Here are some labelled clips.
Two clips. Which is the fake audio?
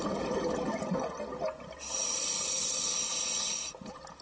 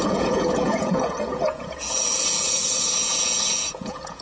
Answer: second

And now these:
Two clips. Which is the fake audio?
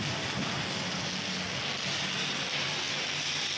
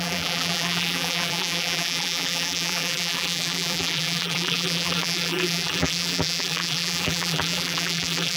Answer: second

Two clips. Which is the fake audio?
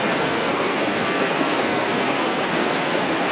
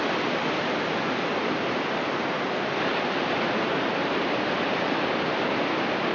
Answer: first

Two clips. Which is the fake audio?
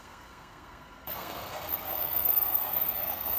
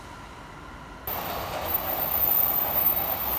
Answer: first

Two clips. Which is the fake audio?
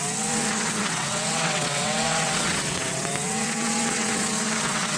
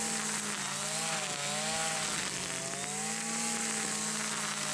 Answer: first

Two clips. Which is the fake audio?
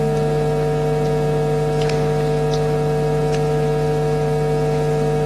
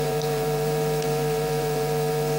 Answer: second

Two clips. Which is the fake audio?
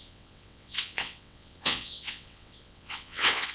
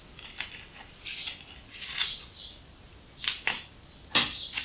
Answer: first